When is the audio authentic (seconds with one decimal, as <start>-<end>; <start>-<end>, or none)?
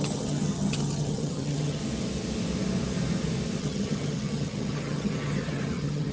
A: 1.8-3.6